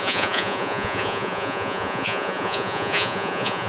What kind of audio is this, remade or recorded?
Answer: remade